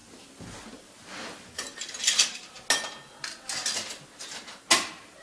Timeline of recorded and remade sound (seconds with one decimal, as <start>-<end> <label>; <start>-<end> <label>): 0.0-5.2 recorded